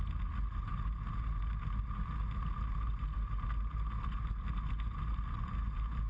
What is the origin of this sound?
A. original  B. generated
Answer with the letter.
A